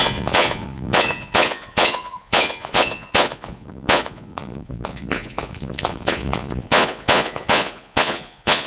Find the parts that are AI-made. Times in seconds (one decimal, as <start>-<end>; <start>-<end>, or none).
0.0-8.7